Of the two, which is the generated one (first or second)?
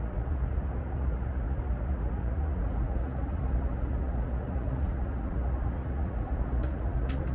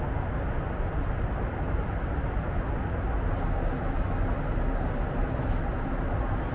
first